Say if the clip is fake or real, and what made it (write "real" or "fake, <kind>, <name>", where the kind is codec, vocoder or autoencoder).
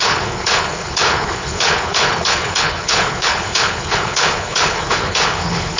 fake, codec, HILCodec